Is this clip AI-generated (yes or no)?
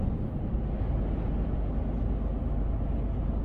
no